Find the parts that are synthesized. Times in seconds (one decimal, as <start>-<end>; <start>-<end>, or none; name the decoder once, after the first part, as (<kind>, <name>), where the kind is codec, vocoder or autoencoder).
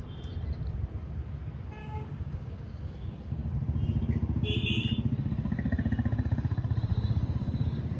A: 1.8-3.5 (codec, DAC); 6.9-8.0